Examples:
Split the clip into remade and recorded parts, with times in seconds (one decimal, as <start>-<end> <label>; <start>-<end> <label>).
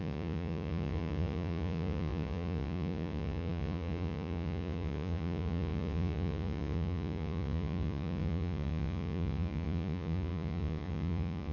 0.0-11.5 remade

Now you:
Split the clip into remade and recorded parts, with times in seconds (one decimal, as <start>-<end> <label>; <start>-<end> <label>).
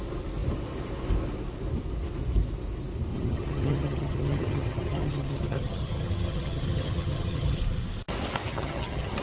0.0-3.1 recorded; 3.1-7.6 remade; 7.6-8.5 recorded; 8.5-9.2 remade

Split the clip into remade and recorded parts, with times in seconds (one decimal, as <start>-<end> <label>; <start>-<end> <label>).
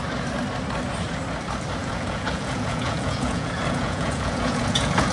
0.0-1.8 recorded; 1.8-5.1 remade